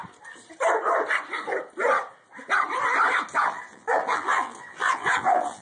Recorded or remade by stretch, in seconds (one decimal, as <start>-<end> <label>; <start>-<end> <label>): 0.0-3.4 recorded; 3.4-5.6 remade